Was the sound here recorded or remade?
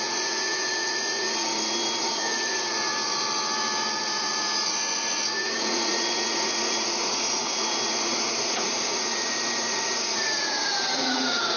remade